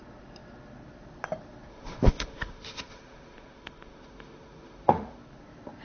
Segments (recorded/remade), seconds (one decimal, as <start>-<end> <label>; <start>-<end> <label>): 0.0-1.7 recorded; 1.7-5.2 remade; 5.2-5.8 recorded